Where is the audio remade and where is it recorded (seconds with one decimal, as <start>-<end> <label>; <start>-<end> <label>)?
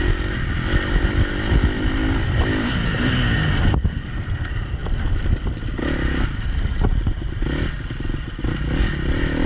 0.0-9.5 recorded